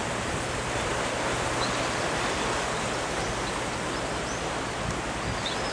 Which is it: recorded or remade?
recorded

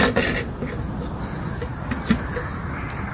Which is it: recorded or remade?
recorded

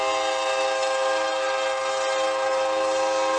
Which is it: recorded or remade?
recorded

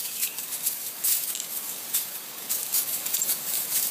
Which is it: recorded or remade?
remade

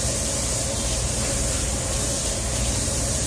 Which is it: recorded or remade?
recorded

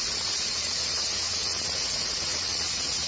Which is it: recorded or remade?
remade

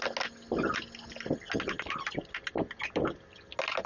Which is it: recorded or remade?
recorded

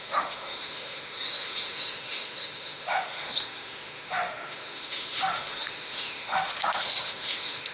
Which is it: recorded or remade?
remade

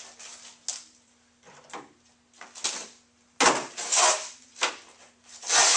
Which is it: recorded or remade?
recorded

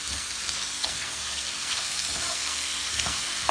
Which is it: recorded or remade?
remade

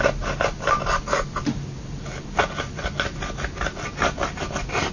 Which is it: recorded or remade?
recorded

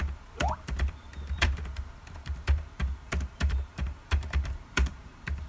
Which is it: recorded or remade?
remade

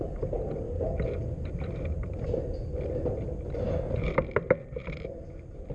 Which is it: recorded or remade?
recorded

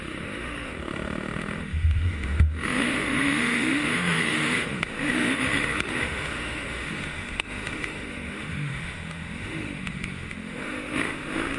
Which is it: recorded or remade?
remade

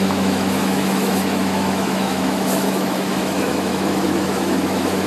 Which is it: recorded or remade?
remade